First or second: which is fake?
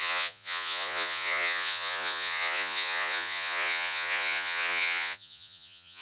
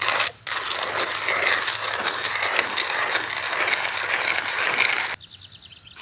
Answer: first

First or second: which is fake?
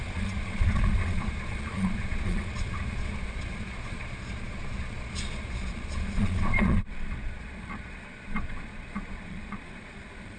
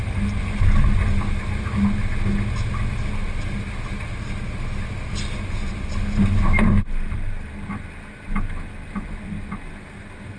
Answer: first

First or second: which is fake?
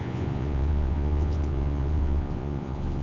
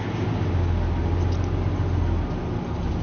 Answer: first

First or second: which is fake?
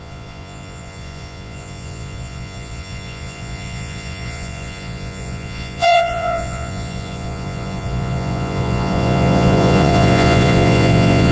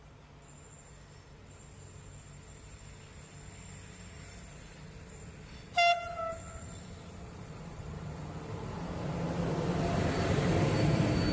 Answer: first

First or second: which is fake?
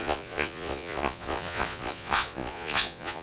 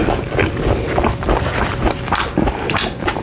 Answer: first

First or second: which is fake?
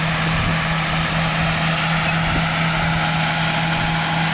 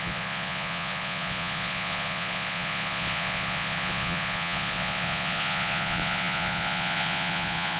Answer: second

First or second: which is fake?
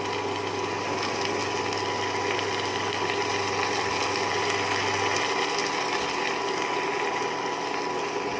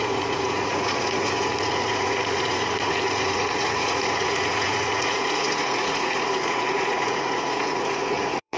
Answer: second